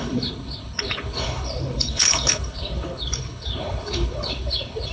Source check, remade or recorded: remade